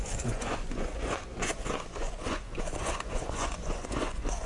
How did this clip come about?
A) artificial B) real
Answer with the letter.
A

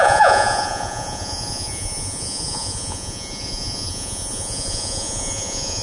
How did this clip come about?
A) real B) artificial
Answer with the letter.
B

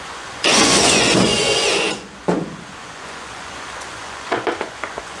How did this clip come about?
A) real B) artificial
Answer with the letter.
B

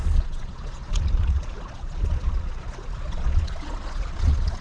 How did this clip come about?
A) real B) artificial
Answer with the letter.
B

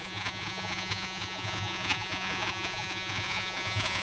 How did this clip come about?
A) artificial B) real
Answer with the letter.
A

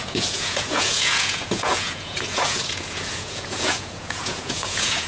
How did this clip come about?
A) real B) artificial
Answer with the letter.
B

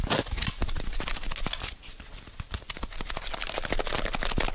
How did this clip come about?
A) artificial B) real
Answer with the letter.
B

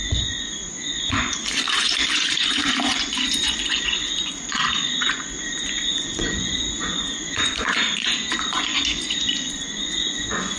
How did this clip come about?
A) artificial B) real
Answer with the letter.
A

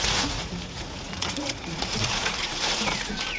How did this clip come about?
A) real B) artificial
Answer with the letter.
B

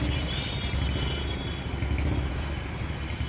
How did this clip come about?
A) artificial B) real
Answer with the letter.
B